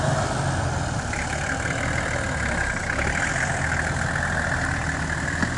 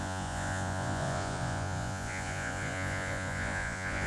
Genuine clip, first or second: first